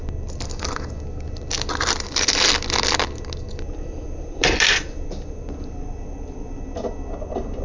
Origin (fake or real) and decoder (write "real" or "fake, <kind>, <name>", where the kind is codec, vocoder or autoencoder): real